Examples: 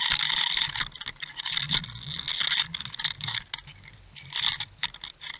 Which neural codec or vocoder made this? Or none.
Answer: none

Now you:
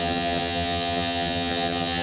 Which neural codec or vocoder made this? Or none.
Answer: vocoder, HiFi-GAN